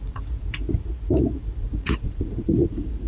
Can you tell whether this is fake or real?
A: fake